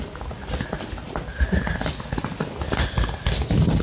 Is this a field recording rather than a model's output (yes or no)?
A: yes